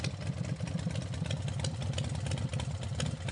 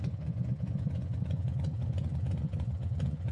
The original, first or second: first